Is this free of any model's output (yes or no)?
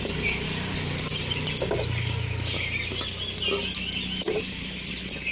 yes